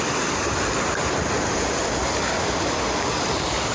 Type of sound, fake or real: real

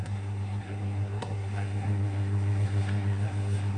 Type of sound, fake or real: fake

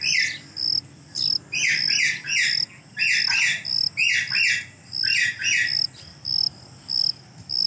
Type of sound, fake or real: real